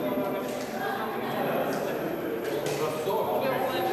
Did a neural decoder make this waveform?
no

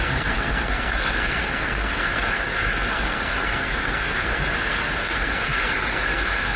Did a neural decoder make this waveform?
yes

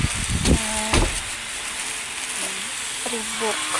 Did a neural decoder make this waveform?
no